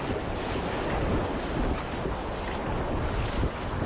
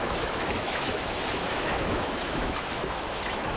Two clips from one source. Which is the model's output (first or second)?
second